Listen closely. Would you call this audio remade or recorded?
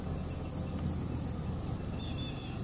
recorded